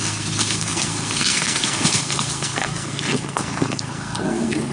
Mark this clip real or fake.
fake